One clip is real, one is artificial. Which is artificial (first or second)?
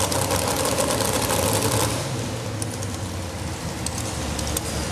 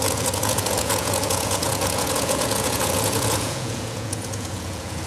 second